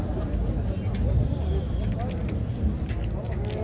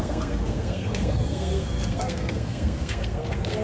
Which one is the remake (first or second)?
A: second